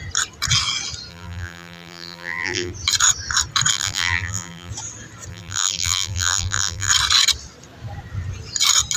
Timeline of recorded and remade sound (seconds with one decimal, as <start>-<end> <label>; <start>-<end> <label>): 0.0-1.1 recorded; 1.1-2.7 remade; 2.7-3.7 recorded; 3.7-4.7 remade; 4.7-5.3 recorded; 5.3-6.9 remade; 6.9-9.0 recorded

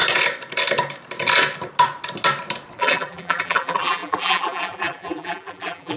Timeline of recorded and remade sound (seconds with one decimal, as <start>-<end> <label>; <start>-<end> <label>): 0.0-2.8 recorded; 2.8-6.0 remade